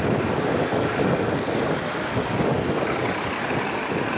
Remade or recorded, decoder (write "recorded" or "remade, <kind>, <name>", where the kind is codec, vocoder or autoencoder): recorded